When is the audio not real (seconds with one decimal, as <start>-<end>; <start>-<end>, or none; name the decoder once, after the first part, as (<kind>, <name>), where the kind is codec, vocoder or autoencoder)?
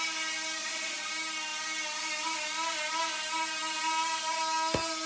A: 0.6-1.1 (vocoder, Vocos)